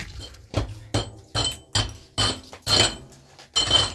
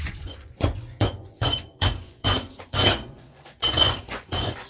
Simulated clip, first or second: second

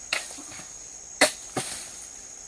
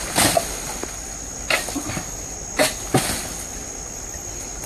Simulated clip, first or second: first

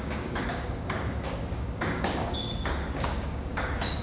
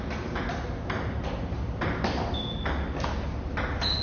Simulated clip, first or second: first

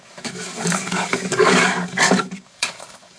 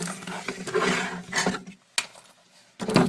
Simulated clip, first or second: first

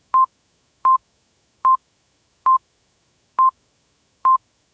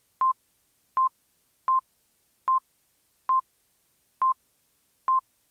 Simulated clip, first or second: first